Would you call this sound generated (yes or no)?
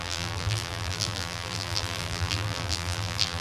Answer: yes